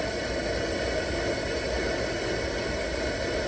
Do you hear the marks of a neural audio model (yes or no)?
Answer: no